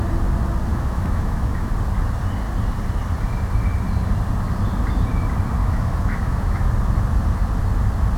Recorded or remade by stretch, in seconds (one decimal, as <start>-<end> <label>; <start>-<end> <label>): 0.0-0.7 recorded; 0.7-1.7 remade; 1.7-5.6 recorded; 5.6-6.7 remade; 6.7-8.2 recorded